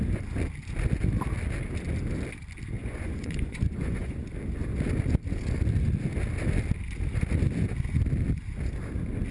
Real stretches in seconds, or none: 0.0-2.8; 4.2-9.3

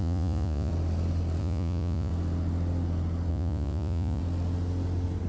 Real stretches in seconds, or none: 0.7-1.4; 2.1-3.3; 4.2-5.3

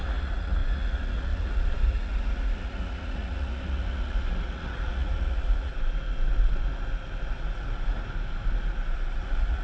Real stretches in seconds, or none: 5.7-9.2

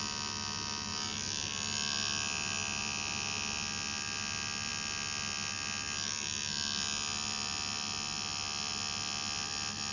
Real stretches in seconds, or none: 0.0-9.9